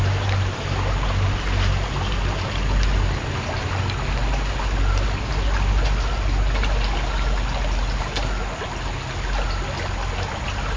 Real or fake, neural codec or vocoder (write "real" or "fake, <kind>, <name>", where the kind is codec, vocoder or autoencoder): real